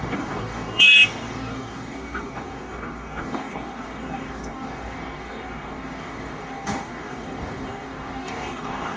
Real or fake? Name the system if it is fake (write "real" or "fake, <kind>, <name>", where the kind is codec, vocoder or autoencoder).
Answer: fake, codec, DAC